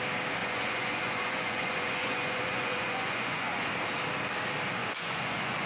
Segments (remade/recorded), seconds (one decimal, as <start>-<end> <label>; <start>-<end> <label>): 0.0-0.4 recorded; 0.4-3.7 remade; 3.7-4.8 recorded; 4.8-5.7 remade